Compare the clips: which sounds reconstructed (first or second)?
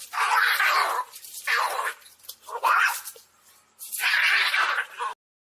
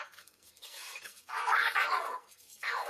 second